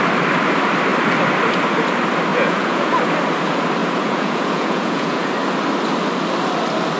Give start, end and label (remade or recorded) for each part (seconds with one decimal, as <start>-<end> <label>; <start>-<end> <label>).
0.0-2.3 recorded; 2.3-3.0 remade; 3.0-3.8 recorded; 3.8-5.3 remade; 5.3-7.0 recorded